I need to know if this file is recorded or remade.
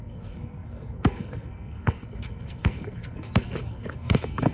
remade